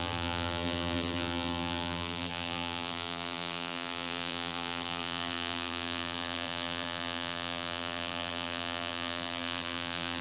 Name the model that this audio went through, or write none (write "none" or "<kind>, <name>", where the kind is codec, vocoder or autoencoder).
vocoder, BigVGAN v2